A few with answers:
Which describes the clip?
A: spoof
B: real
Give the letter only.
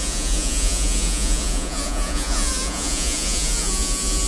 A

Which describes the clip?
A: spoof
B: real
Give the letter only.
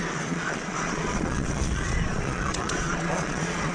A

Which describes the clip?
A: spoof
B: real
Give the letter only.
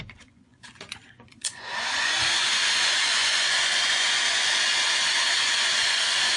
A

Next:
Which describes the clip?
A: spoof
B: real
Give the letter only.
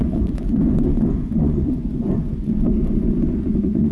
A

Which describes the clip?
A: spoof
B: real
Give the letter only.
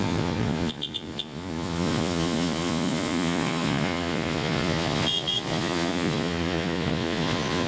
A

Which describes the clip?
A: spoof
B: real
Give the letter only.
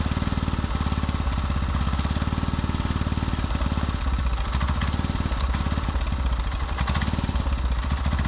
B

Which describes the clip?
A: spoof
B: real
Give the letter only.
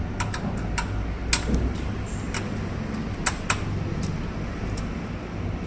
B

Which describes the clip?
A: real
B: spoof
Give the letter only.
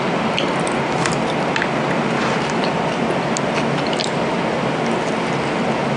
A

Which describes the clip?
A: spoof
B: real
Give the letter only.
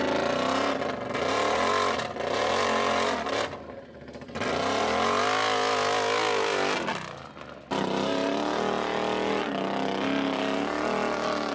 B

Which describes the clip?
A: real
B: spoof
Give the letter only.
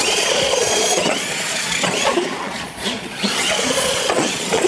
B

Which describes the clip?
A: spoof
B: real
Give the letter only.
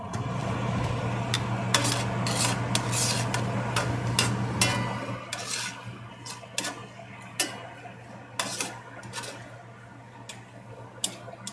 B